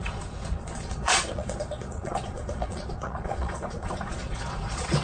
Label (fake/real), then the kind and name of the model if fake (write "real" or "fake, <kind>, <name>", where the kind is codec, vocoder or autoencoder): fake, vocoder, Vocos